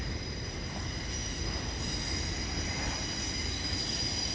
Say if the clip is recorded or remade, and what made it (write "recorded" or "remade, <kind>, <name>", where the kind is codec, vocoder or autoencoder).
recorded